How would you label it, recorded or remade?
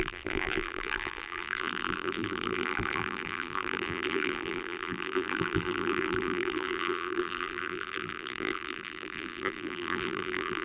remade